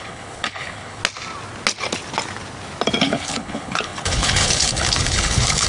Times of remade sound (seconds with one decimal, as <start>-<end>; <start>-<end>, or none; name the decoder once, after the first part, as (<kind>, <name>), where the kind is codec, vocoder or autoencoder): 0.0-1.0 (codec, HILCodec); 3.0-5.7